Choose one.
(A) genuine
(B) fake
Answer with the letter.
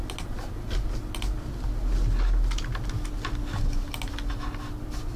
A